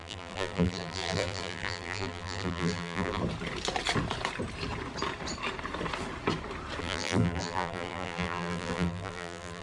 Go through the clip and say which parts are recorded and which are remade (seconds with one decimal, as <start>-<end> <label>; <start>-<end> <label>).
0.0-3.2 remade; 3.2-6.8 recorded; 6.8-9.6 remade

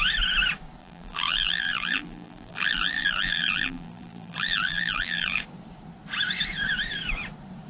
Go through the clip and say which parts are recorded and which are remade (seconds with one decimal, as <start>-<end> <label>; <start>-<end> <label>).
0.0-0.8 recorded; 0.8-5.4 remade; 5.4-7.7 recorded

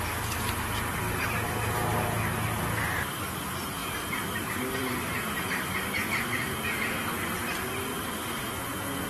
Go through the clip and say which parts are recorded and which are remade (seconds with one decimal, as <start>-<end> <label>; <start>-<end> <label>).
0.0-3.8 recorded; 3.8-5.6 remade; 5.6-7.9 recorded; 7.9-8.6 remade; 8.6-9.1 recorded

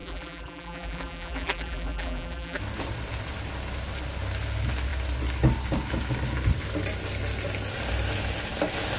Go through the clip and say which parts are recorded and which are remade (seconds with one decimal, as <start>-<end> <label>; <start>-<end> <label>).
0.0-2.6 remade; 2.6-9.0 recorded

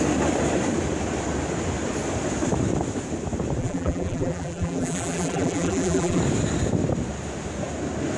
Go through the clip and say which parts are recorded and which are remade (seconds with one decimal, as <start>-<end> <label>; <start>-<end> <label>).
0.0-3.6 recorded; 3.6-6.2 remade; 6.2-8.2 recorded

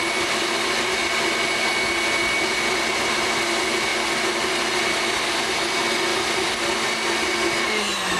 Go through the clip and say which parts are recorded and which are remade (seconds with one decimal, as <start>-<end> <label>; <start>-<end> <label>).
0.0-6.1 recorded; 6.1-8.2 remade

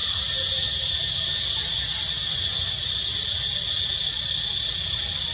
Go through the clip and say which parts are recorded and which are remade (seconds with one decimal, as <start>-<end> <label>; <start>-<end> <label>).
0.0-3.2 remade; 3.2-5.3 recorded